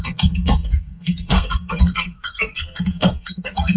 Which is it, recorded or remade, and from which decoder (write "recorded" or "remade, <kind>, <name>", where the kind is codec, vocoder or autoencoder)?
remade, codec, SNAC